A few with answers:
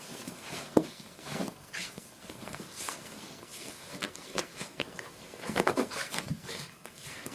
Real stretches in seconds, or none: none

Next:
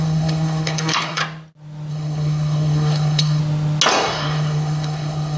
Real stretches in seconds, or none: 1.2-1.9; 3.4-3.9

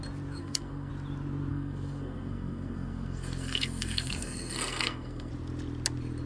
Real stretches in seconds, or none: 0.0-0.4; 0.9-1.5; 5.3-6.3